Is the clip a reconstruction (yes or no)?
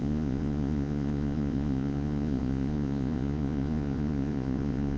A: yes